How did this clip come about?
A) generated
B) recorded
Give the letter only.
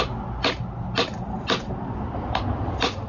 B